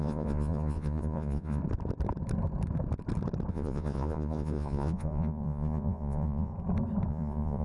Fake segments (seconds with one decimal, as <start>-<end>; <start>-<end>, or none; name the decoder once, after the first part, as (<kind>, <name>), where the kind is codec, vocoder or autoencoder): 0.0-1.6 (vocoder, Vocos); 3.5-6.5; 7.1-7.6